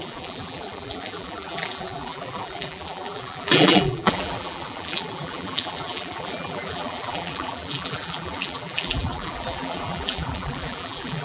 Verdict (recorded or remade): remade